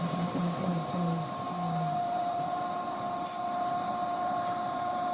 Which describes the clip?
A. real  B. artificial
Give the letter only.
B